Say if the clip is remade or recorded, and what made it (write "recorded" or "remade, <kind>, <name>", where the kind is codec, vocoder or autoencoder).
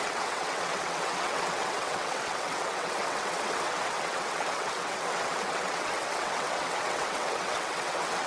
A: remade, vocoder, WaveNeXt